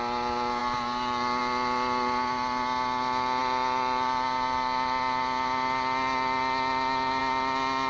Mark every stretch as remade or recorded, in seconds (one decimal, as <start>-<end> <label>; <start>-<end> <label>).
0.0-7.9 recorded